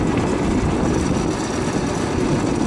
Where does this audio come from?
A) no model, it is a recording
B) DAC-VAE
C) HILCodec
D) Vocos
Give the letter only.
A